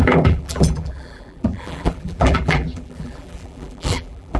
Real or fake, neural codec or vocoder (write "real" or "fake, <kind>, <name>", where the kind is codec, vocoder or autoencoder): fake, vocoder, BigVGAN v2